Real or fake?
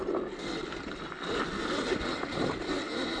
real